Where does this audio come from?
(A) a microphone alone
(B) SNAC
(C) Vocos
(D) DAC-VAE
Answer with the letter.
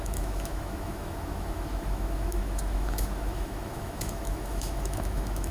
D